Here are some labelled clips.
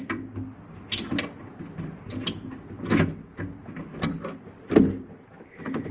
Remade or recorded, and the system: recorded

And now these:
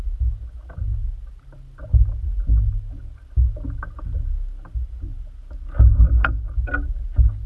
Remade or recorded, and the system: recorded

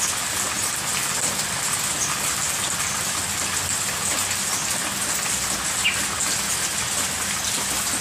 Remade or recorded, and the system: recorded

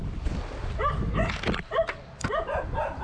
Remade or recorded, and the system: recorded